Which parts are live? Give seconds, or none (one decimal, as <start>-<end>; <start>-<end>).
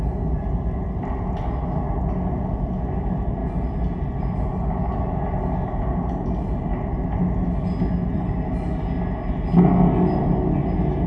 0.0-11.1